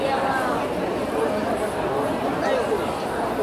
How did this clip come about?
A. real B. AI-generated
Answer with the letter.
A